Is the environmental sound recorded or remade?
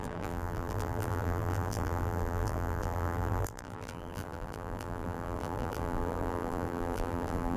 remade